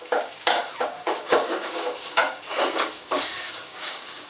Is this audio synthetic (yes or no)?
yes